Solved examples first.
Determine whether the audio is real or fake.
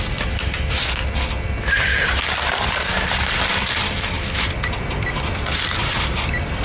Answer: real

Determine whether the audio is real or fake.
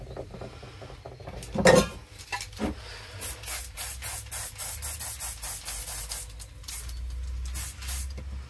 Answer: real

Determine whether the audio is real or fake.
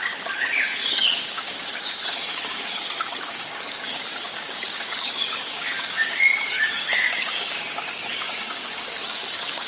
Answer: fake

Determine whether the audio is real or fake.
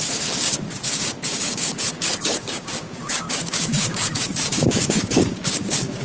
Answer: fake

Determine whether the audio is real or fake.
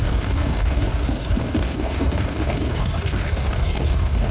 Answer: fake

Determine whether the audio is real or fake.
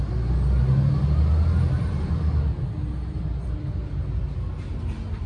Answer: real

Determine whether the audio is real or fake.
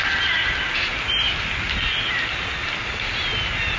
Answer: real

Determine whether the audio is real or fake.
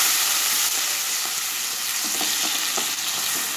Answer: real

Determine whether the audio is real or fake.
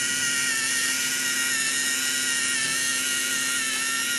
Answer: real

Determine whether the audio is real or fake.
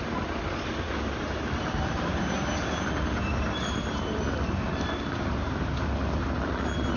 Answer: real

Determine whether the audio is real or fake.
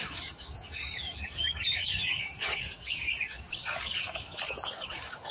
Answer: fake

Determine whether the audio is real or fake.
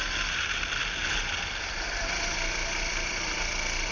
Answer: real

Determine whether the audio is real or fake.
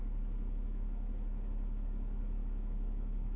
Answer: fake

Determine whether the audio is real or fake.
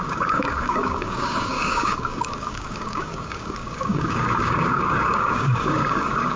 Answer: fake